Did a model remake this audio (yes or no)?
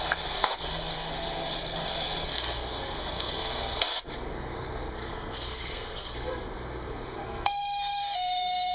yes